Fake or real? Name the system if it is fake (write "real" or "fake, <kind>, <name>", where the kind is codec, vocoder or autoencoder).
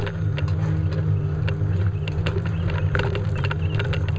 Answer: real